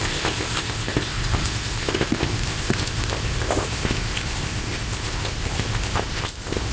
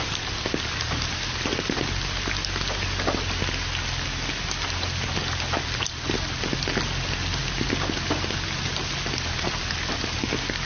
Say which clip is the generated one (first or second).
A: first